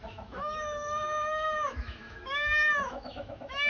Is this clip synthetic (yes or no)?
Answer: yes